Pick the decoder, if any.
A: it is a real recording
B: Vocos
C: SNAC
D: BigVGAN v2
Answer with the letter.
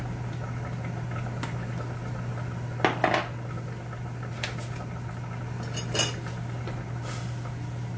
A